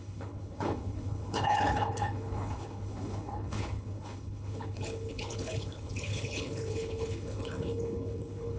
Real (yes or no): no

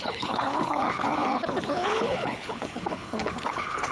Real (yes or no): no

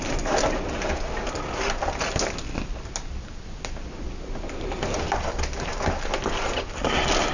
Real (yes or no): yes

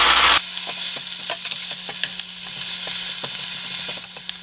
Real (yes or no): yes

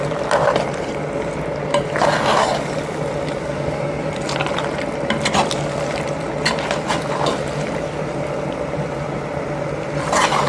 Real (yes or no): yes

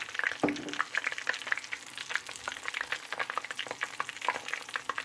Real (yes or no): yes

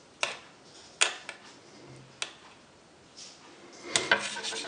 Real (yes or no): yes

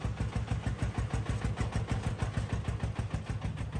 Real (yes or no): yes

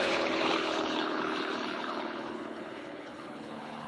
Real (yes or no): no